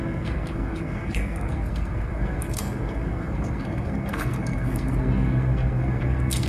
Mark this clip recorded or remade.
remade